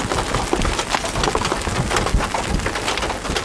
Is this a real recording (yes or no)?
yes